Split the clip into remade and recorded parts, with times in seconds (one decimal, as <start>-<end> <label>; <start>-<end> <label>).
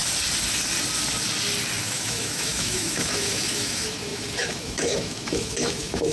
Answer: 0.0-1.8 recorded; 1.8-6.1 remade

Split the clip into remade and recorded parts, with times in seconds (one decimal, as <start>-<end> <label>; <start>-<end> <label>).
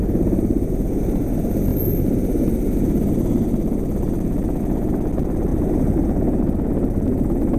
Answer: 0.0-7.6 recorded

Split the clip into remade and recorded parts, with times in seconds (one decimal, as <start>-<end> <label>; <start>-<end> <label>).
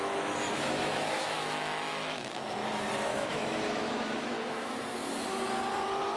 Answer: 0.0-2.5 remade; 2.5-3.1 recorded; 3.1-4.7 remade; 4.7-6.2 recorded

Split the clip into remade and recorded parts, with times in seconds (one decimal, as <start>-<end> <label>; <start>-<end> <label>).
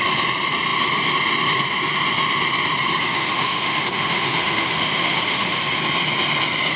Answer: 0.0-3.1 recorded; 3.1-5.6 remade; 5.6-6.8 recorded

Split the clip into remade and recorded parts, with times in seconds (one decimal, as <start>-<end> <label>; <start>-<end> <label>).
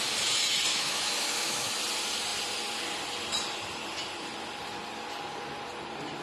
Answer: 0.0-0.7 recorded; 0.7-1.8 remade; 1.8-6.2 recorded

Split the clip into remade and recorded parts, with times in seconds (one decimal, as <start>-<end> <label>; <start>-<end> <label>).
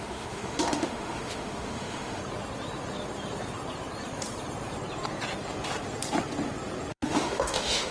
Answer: 0.0-2.2 remade; 2.2-6.9 recorded; 6.9-7.9 remade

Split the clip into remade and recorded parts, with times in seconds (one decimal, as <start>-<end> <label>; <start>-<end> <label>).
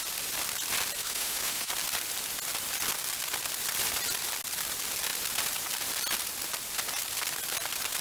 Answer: 0.0-1.0 recorded; 1.0-1.7 remade; 1.7-8.0 recorded